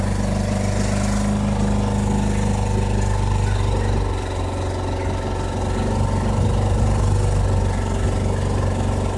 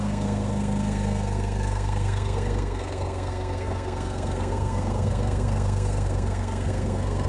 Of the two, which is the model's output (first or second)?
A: second